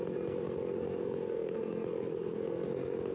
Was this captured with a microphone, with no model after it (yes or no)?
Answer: no